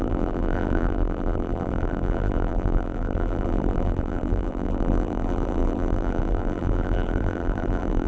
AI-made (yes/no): yes